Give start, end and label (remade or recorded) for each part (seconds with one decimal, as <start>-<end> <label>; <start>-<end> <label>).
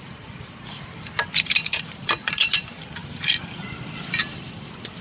0.0-5.0 remade